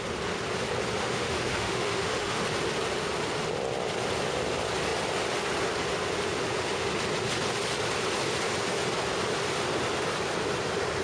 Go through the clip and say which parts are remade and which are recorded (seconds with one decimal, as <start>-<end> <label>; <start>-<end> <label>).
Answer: 0.0-1.0 recorded; 1.0-2.4 remade; 2.4-11.0 recorded